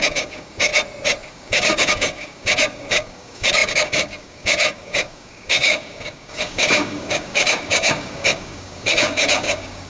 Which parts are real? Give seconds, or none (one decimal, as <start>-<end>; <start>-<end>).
0.7-1.3

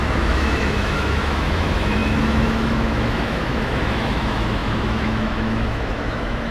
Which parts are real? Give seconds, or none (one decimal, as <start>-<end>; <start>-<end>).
none

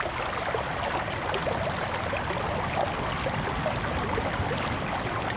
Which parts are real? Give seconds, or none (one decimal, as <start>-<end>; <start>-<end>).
0.0-5.4

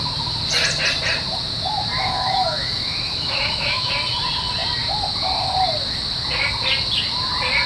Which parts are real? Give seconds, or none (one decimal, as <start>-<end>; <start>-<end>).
0.0-2.0; 3.9-7.7

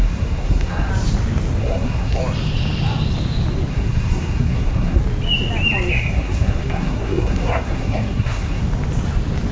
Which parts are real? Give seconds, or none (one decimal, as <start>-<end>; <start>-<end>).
0.9-1.6; 2.2-3.7; 5.0-5.9; 8.6-9.5

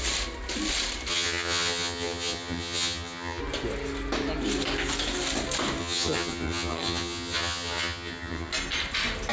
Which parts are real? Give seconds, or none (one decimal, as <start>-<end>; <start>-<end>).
0.0-1.1; 3.4-5.8; 8.5-9.3

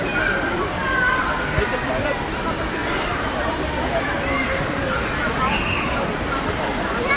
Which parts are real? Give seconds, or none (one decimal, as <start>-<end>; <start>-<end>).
0.0-2.8; 5.1-7.2